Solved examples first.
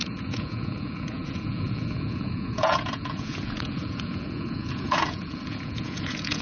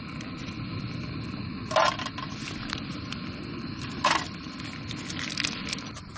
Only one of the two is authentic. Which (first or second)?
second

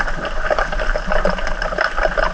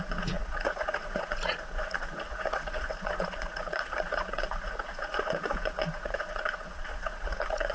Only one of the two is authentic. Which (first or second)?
first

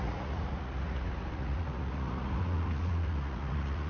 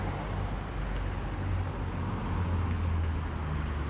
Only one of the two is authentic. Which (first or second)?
second